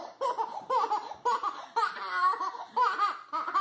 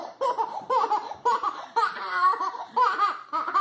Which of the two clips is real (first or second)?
first